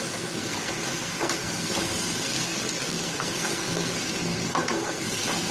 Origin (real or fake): fake